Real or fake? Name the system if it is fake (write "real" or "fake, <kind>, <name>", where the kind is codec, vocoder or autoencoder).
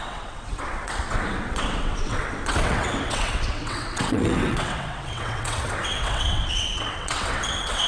fake, vocoder, WaveNeXt